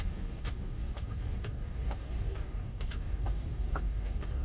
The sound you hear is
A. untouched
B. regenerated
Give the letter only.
B